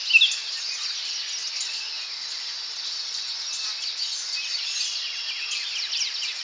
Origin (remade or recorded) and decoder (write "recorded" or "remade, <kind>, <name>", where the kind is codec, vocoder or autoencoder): recorded